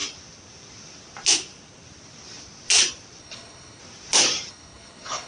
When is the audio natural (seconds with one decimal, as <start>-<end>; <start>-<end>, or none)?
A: 0.0-3.2; 3.8-4.5